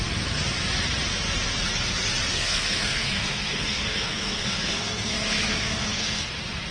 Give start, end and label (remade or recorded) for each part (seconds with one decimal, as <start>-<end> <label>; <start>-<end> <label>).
0.0-2.3 recorded; 2.3-6.3 remade; 6.3-6.7 recorded